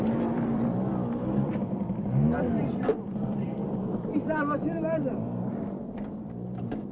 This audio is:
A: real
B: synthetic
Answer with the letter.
B